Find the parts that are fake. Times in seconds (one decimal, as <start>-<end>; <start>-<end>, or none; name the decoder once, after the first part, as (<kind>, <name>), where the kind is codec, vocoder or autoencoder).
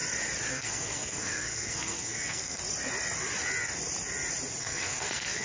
0.5-2.6 (codec, SNAC); 4.6-5.4